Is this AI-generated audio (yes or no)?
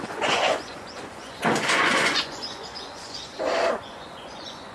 yes